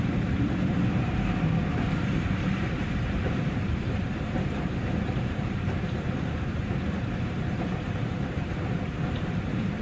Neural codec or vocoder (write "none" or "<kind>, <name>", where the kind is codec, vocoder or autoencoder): vocoder, BigVGAN v2